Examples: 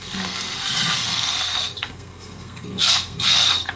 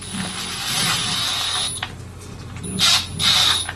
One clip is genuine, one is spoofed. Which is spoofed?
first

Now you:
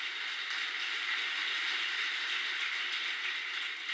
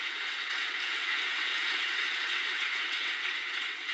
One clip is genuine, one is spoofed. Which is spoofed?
second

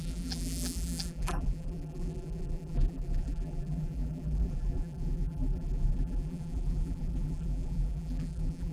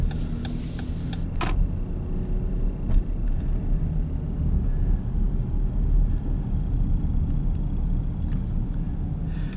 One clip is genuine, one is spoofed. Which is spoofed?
first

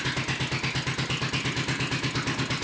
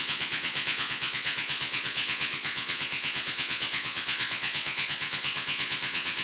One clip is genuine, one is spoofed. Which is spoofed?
second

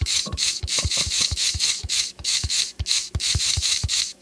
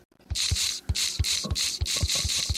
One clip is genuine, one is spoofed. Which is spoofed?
first